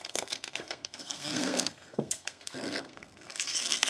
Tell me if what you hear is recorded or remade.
remade